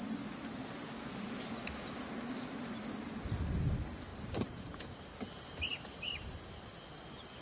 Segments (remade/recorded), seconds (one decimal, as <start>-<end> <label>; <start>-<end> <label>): 0.0-4.1 recorded; 4.1-5.0 remade; 5.0-5.7 recorded; 5.7-6.3 remade; 6.3-7.4 recorded